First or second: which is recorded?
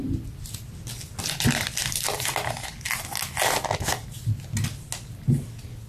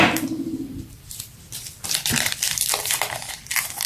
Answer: first